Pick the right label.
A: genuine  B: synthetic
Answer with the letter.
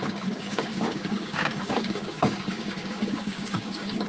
B